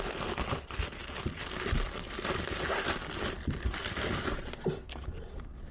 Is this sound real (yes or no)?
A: yes